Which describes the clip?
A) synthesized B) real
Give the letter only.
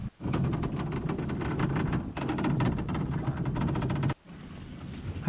B